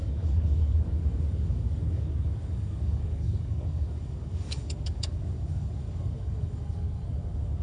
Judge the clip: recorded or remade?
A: remade